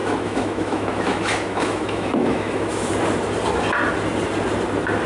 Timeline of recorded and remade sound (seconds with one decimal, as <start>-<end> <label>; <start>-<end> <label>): 0.0-2.9 remade; 2.9-5.1 recorded